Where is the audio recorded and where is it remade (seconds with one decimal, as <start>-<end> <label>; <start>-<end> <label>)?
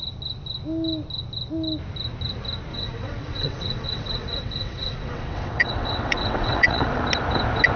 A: 0.0-2.7 recorded; 2.7-7.0 remade; 7.0-7.8 recorded